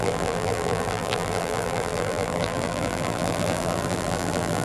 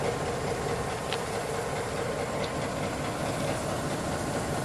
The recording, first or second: second